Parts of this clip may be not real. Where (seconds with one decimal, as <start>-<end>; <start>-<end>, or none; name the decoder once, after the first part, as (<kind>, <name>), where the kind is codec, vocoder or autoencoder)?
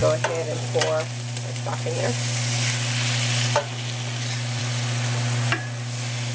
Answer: none